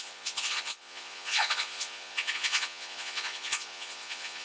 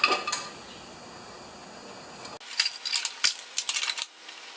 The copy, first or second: first